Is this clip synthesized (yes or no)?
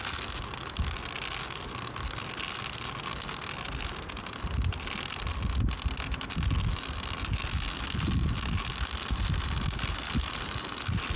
no